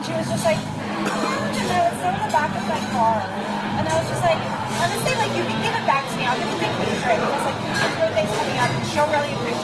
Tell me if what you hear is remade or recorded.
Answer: recorded